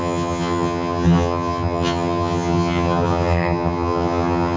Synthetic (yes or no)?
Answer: yes